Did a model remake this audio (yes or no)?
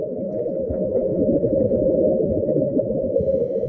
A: yes